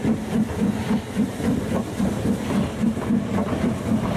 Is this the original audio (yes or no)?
yes